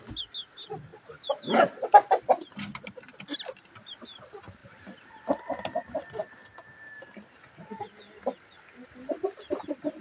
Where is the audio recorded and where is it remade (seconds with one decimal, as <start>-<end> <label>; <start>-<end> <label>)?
0.0-10.0 recorded